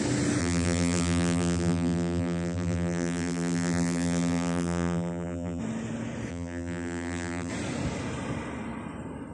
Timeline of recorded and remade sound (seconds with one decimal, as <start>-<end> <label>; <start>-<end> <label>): 0.0-0.4 recorded; 0.4-5.6 remade; 5.6-6.3 recorded; 6.3-7.5 remade; 7.5-9.3 recorded